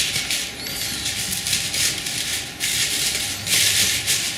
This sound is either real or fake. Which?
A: fake